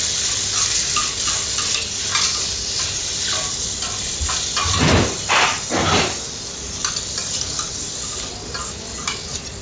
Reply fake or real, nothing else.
real